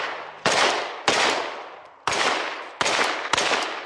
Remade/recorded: recorded